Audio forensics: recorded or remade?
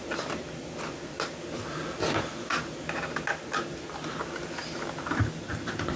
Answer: recorded